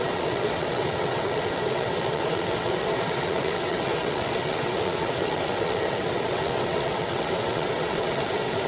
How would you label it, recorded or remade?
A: remade